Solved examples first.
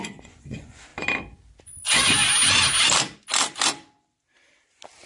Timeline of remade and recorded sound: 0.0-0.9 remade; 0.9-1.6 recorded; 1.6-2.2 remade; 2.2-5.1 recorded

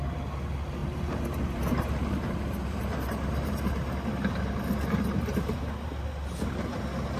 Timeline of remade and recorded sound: 0.0-0.8 recorded; 0.8-4.3 remade; 4.3-7.2 recorded

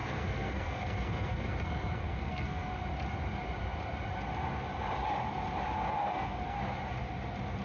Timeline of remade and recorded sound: 0.0-2.7 remade; 2.7-6.0 recorded; 6.0-6.6 remade; 6.6-7.6 recorded

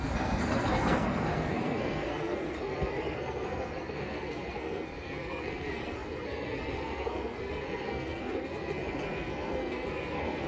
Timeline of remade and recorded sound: 0.0-10.5 remade

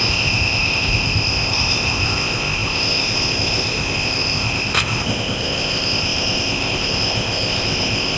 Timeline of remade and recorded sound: 0.0-8.2 remade